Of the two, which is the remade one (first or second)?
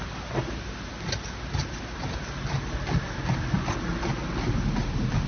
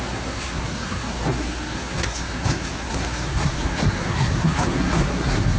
second